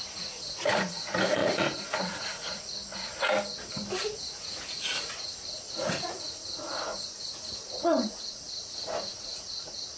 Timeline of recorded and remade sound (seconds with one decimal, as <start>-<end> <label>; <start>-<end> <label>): 0.0-2.8 remade; 2.8-4.0 recorded; 4.0-10.0 remade